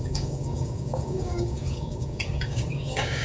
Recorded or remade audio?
remade